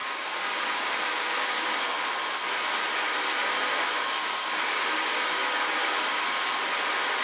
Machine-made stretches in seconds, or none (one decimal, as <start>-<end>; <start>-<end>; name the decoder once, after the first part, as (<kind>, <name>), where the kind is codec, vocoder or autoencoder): 0.0-2.2 (codec, DAC); 3.4-6.5